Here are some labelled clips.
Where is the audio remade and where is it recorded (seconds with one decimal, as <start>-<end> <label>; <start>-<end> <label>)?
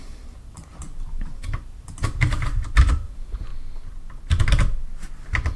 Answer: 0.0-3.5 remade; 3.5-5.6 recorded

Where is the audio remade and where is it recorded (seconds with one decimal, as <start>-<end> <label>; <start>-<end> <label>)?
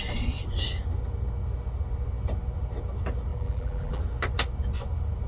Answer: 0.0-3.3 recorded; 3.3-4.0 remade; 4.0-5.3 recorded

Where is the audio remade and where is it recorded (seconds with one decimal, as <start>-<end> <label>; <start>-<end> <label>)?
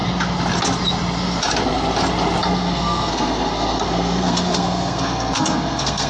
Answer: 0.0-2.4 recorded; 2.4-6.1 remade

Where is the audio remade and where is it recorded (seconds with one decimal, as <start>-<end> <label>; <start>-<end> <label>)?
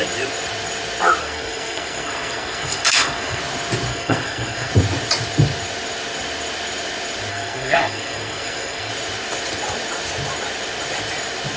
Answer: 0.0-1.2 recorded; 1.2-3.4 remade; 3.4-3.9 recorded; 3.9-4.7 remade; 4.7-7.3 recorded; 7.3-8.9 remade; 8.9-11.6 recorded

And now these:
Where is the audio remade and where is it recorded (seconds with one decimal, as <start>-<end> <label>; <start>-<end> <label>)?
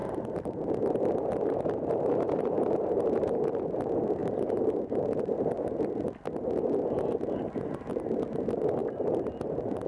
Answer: 0.0-3.6 remade; 3.6-4.2 recorded; 4.2-5.8 remade; 5.8-9.9 recorded